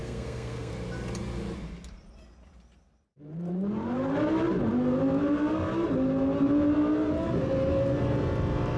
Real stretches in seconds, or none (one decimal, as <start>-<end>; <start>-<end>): 0.7-8.8